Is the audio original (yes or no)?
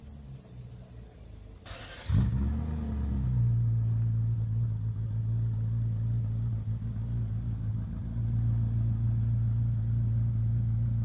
yes